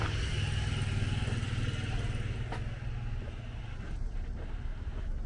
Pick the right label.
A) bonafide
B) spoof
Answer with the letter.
A